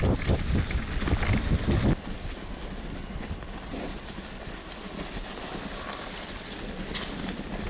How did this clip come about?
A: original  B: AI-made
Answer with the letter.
A